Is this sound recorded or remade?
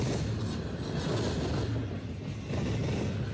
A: recorded